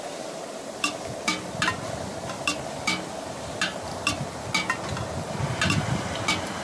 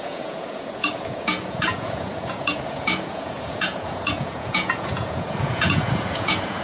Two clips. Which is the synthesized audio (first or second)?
second